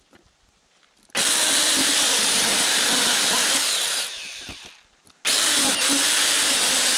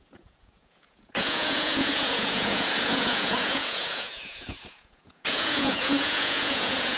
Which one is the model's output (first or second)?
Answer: second